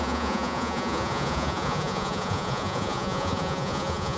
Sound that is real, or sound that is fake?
fake